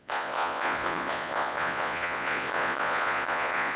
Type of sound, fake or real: fake